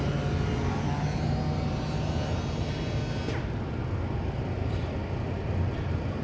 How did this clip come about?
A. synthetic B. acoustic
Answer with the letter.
B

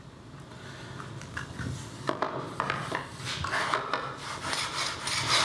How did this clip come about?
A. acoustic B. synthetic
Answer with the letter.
A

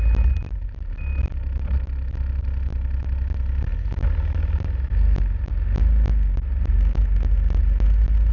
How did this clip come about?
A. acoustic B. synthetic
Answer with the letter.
A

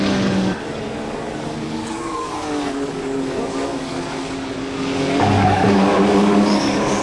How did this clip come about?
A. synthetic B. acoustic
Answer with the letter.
A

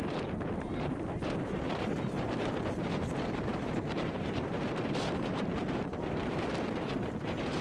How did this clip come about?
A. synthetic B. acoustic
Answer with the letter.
A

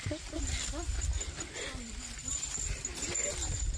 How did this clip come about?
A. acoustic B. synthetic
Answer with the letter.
A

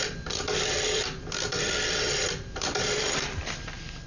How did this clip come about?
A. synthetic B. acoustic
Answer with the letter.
A